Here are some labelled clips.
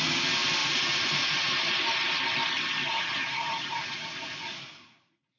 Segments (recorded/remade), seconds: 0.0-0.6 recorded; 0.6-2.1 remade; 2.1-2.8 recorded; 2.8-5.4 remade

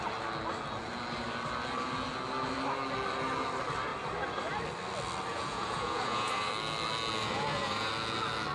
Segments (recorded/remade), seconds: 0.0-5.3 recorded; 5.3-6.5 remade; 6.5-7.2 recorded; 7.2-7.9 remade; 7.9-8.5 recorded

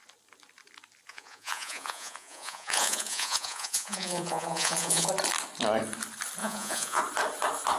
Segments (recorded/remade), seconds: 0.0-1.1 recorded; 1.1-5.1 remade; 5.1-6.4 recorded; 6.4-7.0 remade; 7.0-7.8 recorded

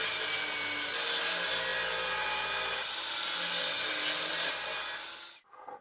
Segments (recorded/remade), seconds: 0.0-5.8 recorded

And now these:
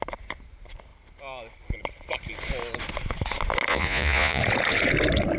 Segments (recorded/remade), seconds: 0.0-3.7 recorded; 3.7-4.4 remade; 4.4-5.4 recorded